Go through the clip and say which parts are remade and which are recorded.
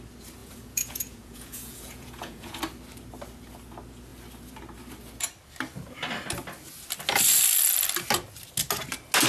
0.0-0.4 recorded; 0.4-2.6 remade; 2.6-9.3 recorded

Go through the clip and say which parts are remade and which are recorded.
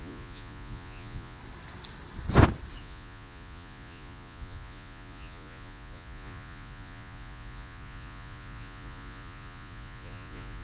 0.0-1.4 remade; 1.4-2.8 recorded; 2.8-10.6 remade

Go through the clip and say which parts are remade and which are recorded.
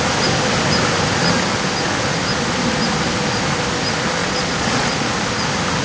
0.0-4.2 recorded; 4.2-5.1 remade; 5.1-5.8 recorded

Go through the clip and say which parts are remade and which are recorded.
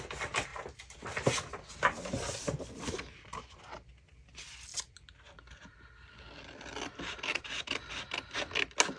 0.0-9.0 recorded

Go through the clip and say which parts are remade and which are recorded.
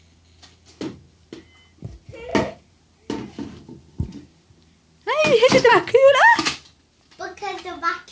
0.0-8.1 recorded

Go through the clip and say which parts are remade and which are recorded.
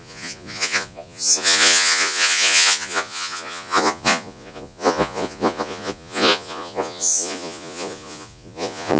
0.0-9.0 remade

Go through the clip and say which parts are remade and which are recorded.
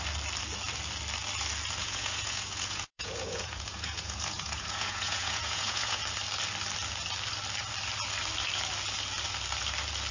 0.0-1.8 recorded; 1.8-6.0 remade; 6.0-10.1 recorded